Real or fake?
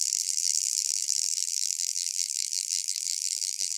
fake